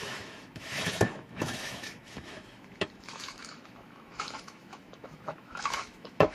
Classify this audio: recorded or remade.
remade